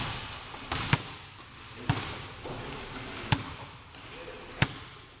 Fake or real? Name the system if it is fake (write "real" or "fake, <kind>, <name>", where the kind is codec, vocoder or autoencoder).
real